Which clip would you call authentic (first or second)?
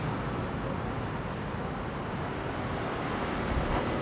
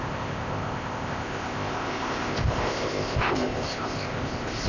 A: first